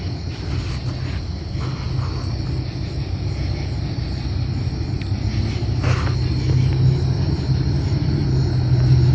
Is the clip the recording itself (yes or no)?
yes